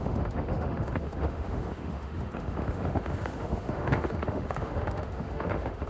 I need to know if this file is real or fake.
fake